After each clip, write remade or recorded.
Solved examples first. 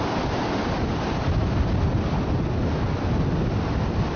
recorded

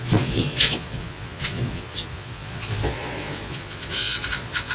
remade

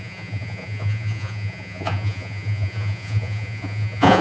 remade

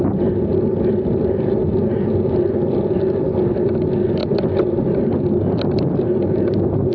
recorded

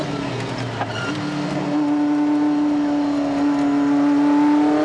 recorded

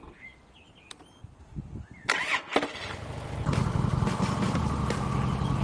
recorded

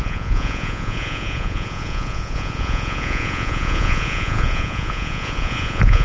remade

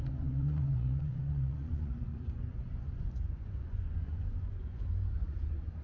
remade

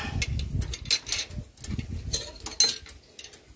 recorded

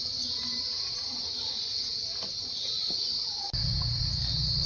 recorded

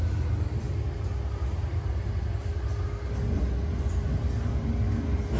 recorded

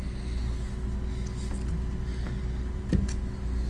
recorded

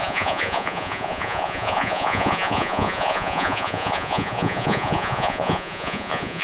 remade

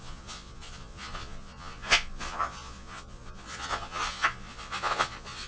remade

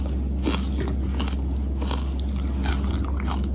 recorded